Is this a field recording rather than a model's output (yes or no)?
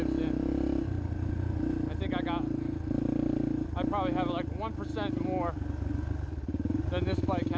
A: yes